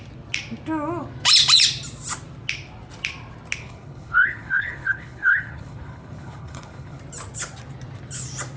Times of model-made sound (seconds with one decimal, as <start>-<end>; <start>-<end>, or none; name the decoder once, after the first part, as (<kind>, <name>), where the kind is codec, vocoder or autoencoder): 3.6-7.0 (codec, HILCodec)